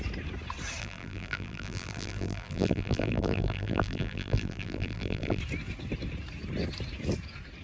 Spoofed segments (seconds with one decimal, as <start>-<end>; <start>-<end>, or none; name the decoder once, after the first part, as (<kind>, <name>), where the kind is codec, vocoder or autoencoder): 0.8-5.4 (vocoder, BigVGAN v2)

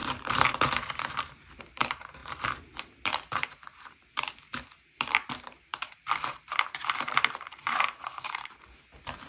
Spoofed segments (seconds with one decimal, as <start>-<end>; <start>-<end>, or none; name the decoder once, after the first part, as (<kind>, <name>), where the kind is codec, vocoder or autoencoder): 0.0-9.3 (vocoder, BigVGAN v2)

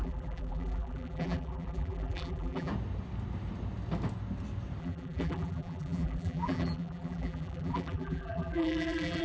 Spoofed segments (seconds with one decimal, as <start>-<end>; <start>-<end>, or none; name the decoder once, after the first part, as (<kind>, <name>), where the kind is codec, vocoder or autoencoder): 0.0-2.7 (vocoder, BigVGAN v2); 4.8-9.2

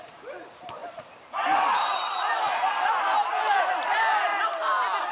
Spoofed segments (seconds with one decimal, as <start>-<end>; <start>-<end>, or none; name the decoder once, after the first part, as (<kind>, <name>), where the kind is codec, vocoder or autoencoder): 0.8-3.9 (vocoder, BigVGAN v2)